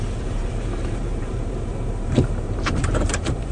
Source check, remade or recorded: remade